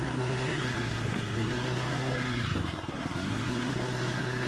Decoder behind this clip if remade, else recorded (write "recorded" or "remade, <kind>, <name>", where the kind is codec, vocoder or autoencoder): remade, codec, SNAC